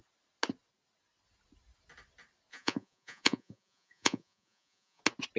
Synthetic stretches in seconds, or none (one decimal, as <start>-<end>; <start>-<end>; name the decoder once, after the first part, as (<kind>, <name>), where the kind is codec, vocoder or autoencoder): 2.5-5.0 (vocoder, Vocos)